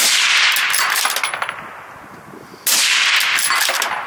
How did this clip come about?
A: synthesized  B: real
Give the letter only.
B